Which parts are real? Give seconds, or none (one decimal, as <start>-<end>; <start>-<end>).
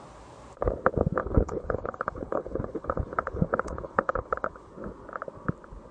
0.0-1.2; 4.7-5.9